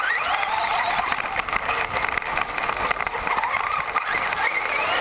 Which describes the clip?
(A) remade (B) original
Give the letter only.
B